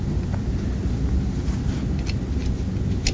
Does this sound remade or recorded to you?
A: recorded